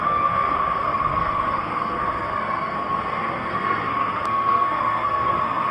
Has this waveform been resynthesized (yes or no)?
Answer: yes